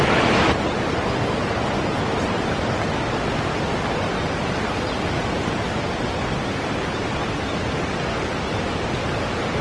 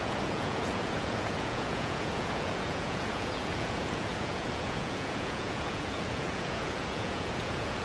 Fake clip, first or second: second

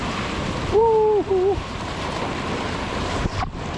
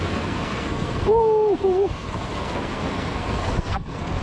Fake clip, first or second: second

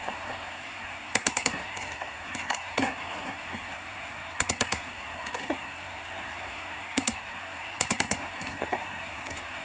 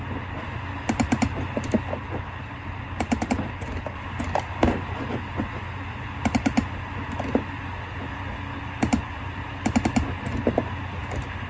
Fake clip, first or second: first